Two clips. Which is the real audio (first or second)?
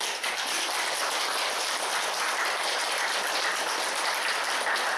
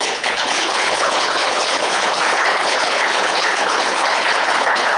first